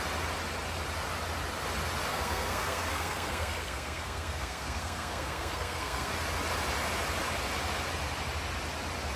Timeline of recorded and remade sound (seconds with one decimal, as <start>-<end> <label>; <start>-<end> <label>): 0.0-2.1 recorded; 2.1-6.1 remade; 6.1-9.2 recorded